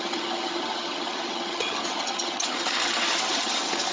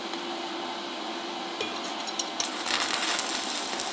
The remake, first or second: first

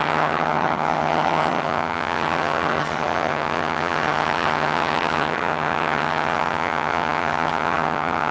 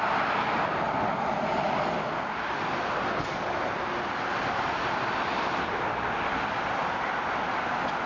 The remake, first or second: first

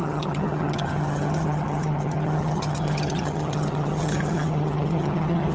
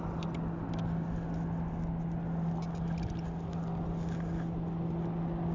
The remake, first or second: first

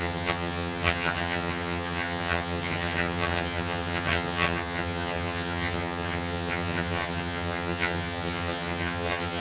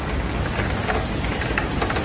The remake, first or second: first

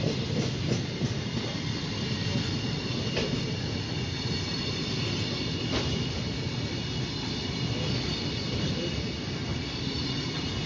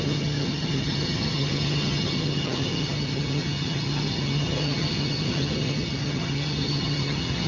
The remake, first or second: second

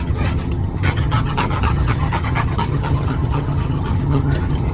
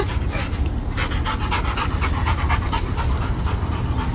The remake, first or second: first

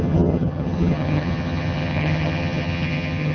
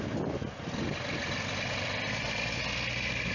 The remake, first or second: first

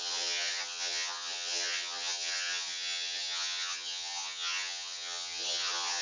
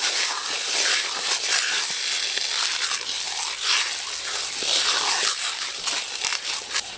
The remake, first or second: first